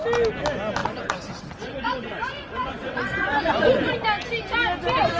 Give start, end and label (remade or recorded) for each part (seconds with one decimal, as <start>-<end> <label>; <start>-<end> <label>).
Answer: 0.0-0.8 recorded; 0.8-3.9 remade; 3.9-5.2 recorded